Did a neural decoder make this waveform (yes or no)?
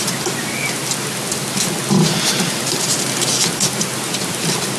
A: no